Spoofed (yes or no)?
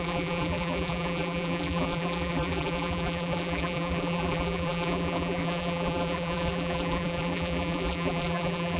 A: yes